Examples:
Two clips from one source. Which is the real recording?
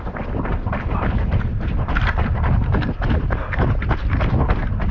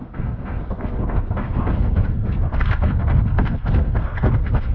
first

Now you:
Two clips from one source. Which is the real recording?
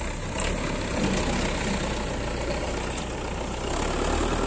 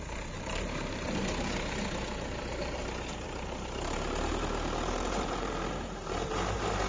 first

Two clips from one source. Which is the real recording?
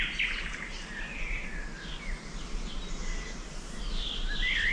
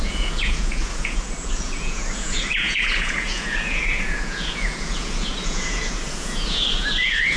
first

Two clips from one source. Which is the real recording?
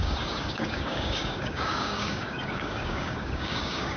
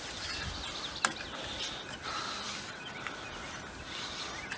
second